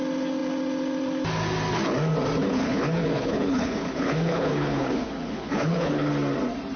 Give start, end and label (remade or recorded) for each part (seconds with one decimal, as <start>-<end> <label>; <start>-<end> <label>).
0.0-2.4 recorded; 2.4-6.1 remade; 6.1-6.8 recorded